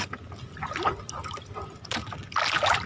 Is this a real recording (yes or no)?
yes